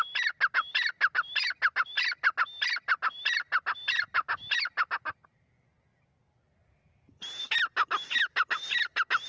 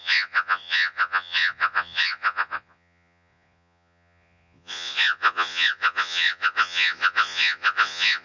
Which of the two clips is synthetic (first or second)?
second